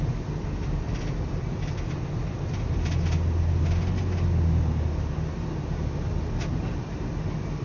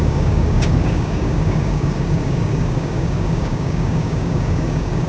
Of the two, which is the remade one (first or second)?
second